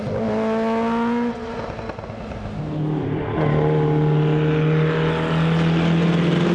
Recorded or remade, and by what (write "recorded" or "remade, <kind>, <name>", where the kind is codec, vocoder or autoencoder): recorded